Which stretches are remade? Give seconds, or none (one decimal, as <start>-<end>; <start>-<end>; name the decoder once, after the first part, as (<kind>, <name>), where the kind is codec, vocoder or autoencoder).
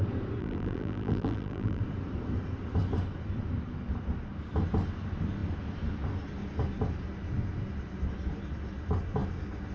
0.4-1.8 (vocoder, BigVGAN v2)